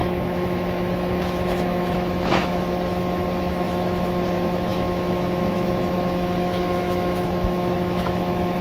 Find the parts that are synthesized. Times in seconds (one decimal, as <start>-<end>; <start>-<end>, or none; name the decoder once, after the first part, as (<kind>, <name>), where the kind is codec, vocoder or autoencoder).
0.0-8.6 (autoencoder, DAC-VAE)